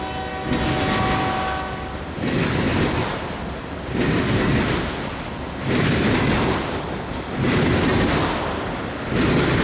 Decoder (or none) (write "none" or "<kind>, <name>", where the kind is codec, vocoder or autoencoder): none